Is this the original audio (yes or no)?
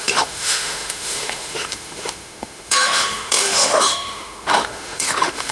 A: no